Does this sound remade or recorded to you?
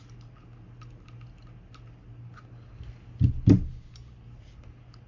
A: recorded